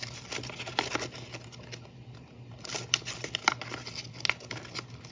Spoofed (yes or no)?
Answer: no